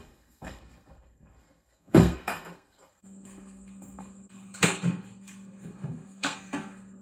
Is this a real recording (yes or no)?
no